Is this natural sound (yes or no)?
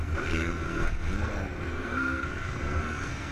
no